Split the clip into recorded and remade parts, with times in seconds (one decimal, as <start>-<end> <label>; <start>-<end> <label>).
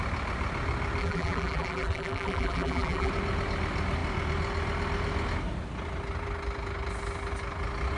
0.0-1.0 recorded; 1.0-3.1 remade; 3.1-8.0 recorded